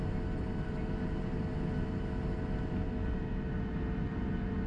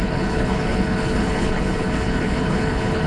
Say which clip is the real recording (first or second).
first